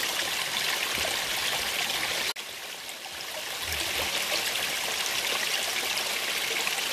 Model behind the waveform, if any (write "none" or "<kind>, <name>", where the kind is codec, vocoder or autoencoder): none